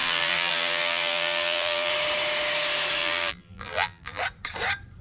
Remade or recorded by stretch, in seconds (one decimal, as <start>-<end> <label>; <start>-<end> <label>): 0.0-1.9 remade; 1.9-3.0 recorded; 3.0-4.2 remade; 4.2-5.0 recorded